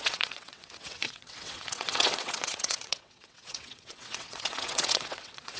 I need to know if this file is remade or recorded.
remade